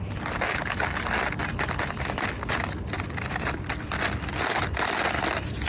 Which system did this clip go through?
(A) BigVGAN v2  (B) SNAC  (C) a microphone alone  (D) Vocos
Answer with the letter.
C